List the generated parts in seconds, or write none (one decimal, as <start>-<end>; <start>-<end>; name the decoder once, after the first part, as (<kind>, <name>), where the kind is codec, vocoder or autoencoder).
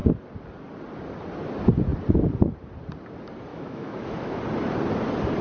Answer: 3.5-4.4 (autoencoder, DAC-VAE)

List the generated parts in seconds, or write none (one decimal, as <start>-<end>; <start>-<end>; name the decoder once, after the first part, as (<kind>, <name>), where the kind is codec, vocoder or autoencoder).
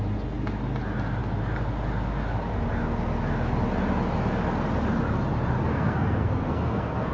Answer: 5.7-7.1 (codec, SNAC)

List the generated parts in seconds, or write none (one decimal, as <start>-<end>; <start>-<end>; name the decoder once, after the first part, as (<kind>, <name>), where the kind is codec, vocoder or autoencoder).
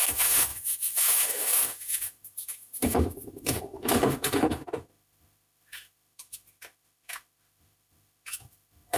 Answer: 0.0-9.0 (autoencoder, DAC-VAE)